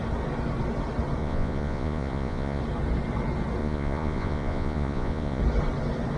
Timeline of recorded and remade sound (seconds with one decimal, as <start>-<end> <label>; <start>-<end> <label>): 0.0-1.2 recorded; 1.2-2.6 remade; 2.6-3.6 recorded; 3.6-5.4 remade; 5.4-6.2 recorded